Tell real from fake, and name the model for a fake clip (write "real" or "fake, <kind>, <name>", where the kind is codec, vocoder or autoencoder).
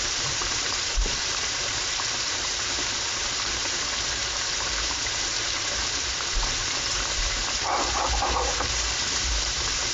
fake, vocoder, BigVGAN v2